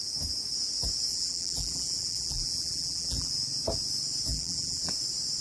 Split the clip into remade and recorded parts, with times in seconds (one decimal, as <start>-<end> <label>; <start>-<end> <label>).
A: 0.0-1.1 recorded; 1.1-3.3 remade; 3.3-4.3 recorded; 4.3-4.9 remade; 4.9-5.4 recorded

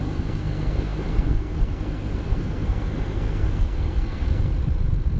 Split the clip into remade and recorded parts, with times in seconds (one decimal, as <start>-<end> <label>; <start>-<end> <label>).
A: 0.0-4.5 remade; 4.5-5.2 recorded